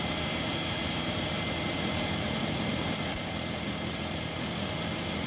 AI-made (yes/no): yes